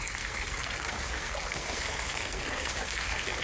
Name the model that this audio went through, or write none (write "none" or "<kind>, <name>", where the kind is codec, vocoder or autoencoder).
codec, SNAC